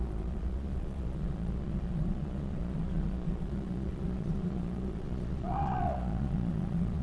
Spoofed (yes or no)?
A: yes